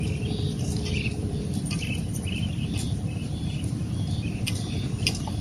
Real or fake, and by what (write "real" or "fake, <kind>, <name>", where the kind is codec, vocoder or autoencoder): fake, vocoder, BigVGAN v2